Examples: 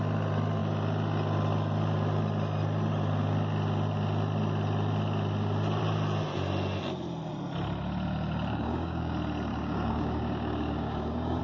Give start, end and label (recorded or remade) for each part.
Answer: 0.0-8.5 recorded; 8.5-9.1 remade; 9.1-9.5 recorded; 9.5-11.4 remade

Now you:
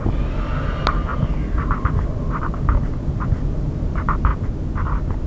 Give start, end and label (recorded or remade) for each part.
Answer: 0.0-5.3 recorded

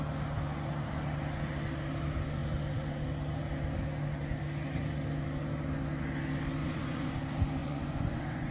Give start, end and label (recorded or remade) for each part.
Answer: 0.0-6.6 recorded; 6.6-7.1 remade; 7.1-7.6 recorded; 7.6-8.5 remade